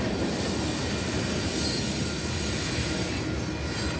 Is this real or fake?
real